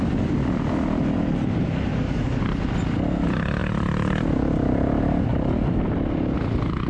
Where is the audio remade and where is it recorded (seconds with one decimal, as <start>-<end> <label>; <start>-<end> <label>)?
0.0-1.9 recorded; 1.9-2.4 remade; 2.4-6.9 recorded